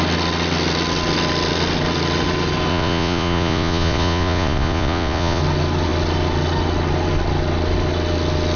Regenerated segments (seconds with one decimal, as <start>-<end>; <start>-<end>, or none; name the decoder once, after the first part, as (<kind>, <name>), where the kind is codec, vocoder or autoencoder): 2.7-5.4 (vocoder, Vocos)